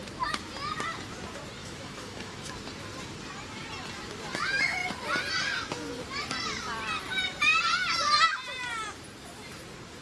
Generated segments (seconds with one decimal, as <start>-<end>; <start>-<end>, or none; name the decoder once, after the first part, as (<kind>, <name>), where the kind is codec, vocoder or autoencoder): 1.6-2.5 (autoencoder, DAC-VAE)